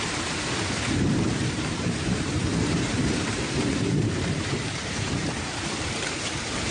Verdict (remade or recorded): remade